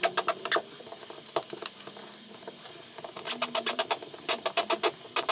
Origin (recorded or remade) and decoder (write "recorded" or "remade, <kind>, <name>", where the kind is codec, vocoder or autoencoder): recorded